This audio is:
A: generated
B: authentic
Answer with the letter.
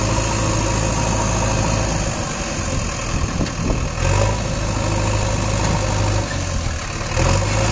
B